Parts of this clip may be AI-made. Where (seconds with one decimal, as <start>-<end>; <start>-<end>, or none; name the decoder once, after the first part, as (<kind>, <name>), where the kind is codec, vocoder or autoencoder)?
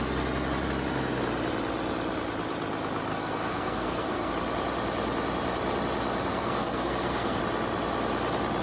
3.1-4.3 (codec, SNAC); 6.3-7.4